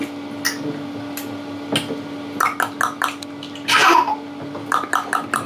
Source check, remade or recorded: recorded